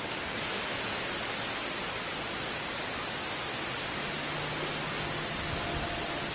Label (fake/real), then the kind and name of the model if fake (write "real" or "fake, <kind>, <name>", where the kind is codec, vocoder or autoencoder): real